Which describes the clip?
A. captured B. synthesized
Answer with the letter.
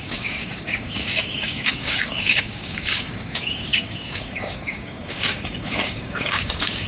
B